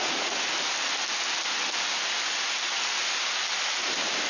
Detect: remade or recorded recorded